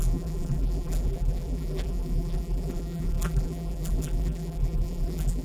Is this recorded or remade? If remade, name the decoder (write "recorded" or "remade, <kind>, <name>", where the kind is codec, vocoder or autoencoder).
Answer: remade, vocoder, BigVGAN v2